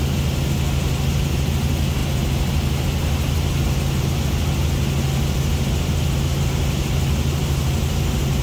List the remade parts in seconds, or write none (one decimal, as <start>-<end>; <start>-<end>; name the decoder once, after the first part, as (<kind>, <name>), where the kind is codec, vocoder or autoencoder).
none